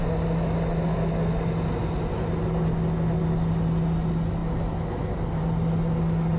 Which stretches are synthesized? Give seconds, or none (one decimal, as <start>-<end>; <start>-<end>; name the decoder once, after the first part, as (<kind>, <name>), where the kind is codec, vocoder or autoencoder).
none